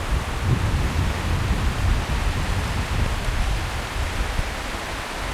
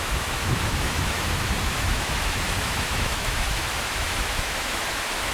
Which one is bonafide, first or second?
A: first